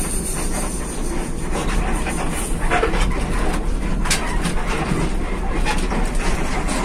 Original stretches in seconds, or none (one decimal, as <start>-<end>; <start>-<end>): 1.6-2.4; 3.9-5.2